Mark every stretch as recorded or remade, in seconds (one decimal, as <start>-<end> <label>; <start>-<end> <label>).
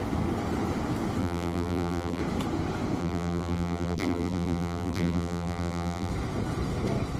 0.0-1.2 recorded; 1.2-2.2 remade; 2.2-3.0 recorded; 3.0-6.1 remade; 6.1-7.2 recorded